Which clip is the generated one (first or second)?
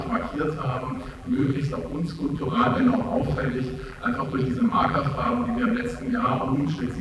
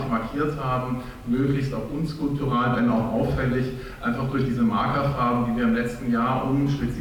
first